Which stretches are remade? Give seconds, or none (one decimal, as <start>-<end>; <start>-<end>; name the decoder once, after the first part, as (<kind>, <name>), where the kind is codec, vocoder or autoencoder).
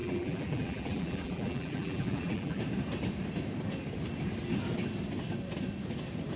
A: 0.0-2.6 (vocoder, BigVGAN v2)